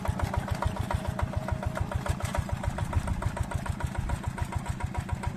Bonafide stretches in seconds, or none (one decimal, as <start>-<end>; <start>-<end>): 0.0-5.4